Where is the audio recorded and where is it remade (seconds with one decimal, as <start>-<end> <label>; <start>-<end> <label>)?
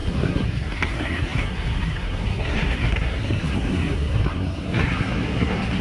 0.0-5.8 remade